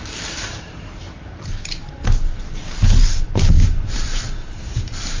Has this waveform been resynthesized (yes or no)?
yes